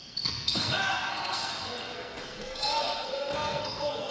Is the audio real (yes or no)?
no